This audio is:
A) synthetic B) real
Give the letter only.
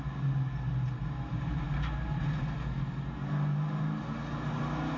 B